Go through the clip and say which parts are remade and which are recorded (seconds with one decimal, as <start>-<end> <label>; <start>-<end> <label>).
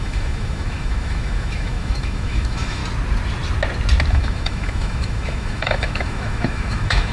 0.0-2.8 remade; 2.8-4.1 recorded; 4.1-7.1 remade